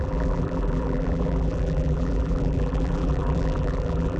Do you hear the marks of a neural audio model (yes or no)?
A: yes